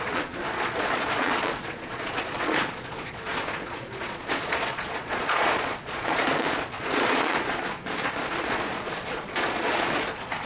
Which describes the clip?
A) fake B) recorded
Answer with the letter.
A